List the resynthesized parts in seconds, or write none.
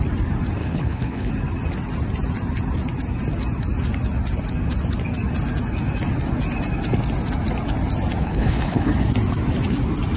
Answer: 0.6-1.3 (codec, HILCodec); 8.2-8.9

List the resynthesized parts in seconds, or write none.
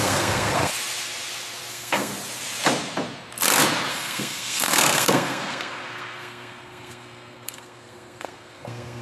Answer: 0.0-0.7 (codec, SNAC); 1.7-2.1; 3.9-9.0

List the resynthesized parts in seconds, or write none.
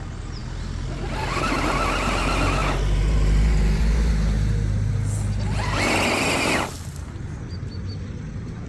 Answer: 2.6-4.1 (vocoder, BigVGAN v2)